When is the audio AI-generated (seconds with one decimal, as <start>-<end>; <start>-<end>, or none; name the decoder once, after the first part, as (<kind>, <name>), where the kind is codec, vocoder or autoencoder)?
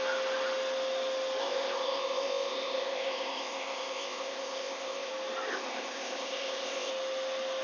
1.4-5.1 (codec, ZipCodec); 5.5-6.9